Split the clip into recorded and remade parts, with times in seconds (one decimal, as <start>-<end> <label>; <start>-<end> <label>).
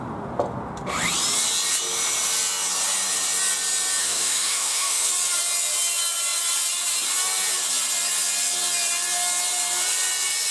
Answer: 0.0-4.0 recorded; 4.0-5.1 remade; 5.1-10.5 recorded